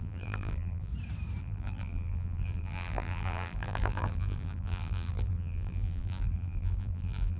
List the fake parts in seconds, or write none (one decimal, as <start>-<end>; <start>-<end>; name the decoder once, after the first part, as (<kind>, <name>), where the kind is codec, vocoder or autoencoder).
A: 0.0-0.9 (vocoder, BigVGAN v2); 1.4-7.4

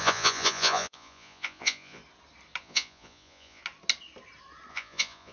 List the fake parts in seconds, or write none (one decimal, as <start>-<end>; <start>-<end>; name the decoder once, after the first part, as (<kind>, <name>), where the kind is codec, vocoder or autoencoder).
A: 0.0-2.0 (vocoder, Vocos); 2.6-3.6; 4.7-5.3

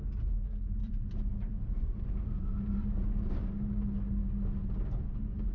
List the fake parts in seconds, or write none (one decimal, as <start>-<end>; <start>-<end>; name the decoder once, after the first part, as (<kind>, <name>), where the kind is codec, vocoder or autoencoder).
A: 0.8-3.5 (vocoder, BigVGAN v2)

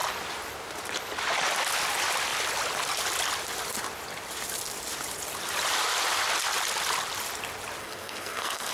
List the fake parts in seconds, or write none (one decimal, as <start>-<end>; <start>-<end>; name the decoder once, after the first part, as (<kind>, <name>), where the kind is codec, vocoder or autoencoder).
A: 7.8-8.7 (codec, SNAC)

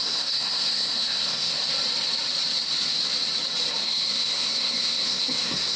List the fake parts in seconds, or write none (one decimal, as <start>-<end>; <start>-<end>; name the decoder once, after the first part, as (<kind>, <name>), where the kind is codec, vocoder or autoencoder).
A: 0.0-1.5 (codec, SNAC); 3.8-5.8

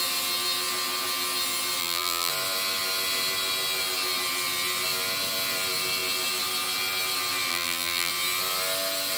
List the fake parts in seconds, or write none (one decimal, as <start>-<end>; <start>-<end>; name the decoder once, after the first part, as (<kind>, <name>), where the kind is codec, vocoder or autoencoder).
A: 1.8-2.3 (vocoder, BigVGAN v2); 7.5-8.1

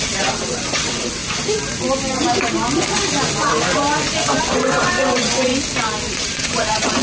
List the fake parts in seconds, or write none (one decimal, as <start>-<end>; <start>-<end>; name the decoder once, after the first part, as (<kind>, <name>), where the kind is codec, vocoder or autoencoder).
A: 0.0-1.2 (vocoder, WaveNeXt); 4.4-5.5; 6.1-7.0

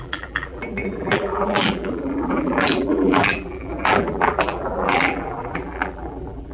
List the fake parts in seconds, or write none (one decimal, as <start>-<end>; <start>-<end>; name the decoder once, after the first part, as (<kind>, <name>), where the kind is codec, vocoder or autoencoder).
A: 0.0-6.5 (vocoder, BigVGAN v2)